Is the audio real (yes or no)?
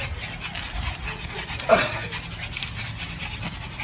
yes